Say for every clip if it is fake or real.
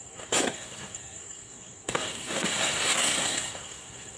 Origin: fake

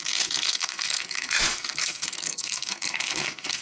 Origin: fake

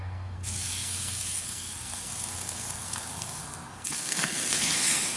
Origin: fake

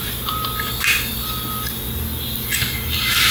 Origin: real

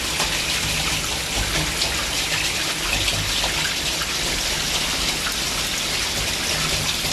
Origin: real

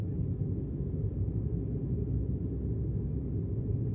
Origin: real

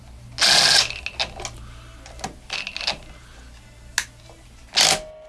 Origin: real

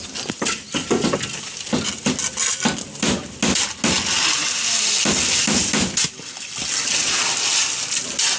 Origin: real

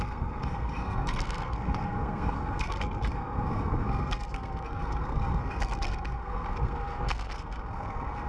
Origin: fake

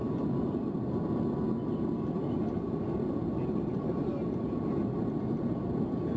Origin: real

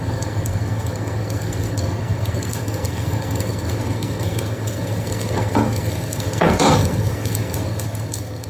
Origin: fake